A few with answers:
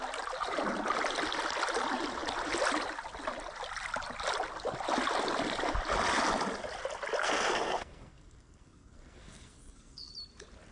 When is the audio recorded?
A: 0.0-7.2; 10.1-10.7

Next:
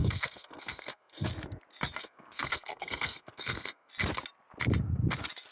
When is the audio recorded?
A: 1.3-2.0; 3.9-5.5

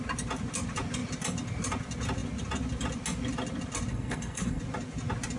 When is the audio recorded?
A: 0.0-3.9; 4.6-5.4